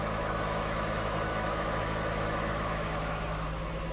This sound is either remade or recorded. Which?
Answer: remade